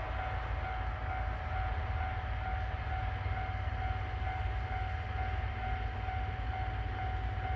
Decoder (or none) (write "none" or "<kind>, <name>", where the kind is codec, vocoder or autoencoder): none